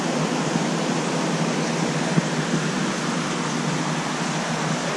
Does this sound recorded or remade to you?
recorded